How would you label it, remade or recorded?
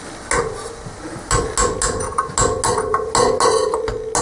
recorded